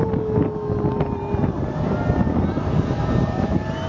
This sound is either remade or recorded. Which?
recorded